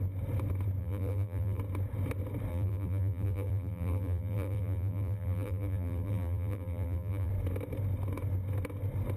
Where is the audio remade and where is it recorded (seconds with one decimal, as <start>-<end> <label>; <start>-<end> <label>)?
0.0-0.8 recorded; 0.8-1.6 remade; 1.6-2.5 recorded; 2.5-7.3 remade; 7.3-9.2 recorded

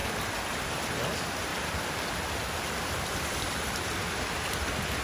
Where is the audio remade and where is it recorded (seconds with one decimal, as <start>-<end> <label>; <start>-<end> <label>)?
0.0-1.0 remade; 1.0-1.5 recorded; 1.5-4.5 remade; 4.5-5.0 recorded